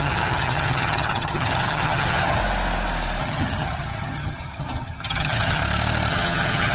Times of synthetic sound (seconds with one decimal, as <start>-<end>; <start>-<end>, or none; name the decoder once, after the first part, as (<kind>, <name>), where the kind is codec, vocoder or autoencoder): 0.0-2.4 (vocoder, HiFi-GAN); 3.2-5.6; 6.1-6.7